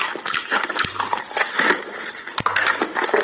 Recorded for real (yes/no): yes